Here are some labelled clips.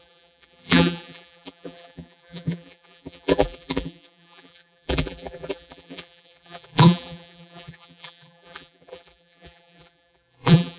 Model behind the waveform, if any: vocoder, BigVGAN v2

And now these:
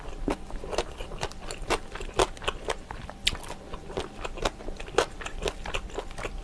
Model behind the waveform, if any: none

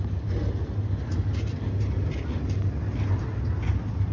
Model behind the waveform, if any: none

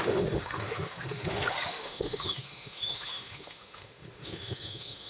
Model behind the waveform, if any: autoencoder, DAC-VAE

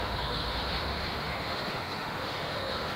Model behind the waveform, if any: autoencoder, DAC-VAE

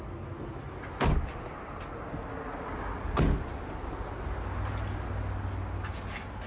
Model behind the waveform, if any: none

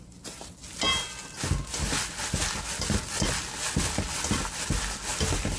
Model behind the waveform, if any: none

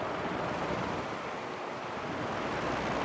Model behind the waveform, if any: none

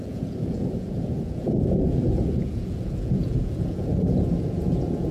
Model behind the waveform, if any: vocoder, Vocos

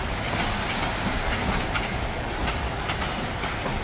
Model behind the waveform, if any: none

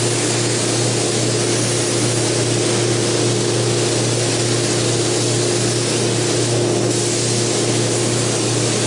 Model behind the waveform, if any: none